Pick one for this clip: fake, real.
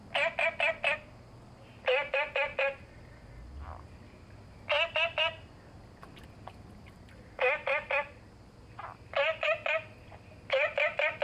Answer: real